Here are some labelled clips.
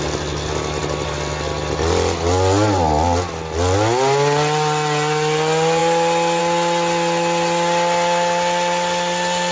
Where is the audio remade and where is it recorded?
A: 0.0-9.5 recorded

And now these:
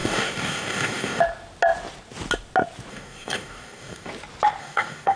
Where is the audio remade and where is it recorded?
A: 0.0-1.2 remade; 1.2-2.9 recorded; 2.9-4.1 remade; 4.1-4.6 recorded; 4.6-5.2 remade

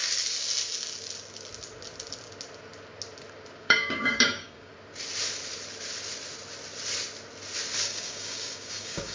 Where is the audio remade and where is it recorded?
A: 0.0-3.6 recorded; 3.6-4.7 remade; 4.7-7.8 recorded; 7.8-9.1 remade

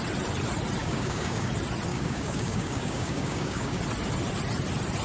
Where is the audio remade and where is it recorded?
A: 0.0-0.8 recorded; 0.8-1.5 remade; 1.5-1.9 recorded; 1.9-3.8 remade; 3.8-5.0 recorded